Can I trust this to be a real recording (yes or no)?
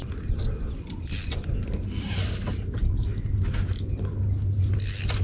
yes